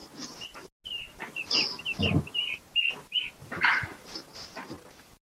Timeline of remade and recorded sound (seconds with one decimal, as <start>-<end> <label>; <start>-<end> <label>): 0.0-3.4 recorded; 3.4-5.2 remade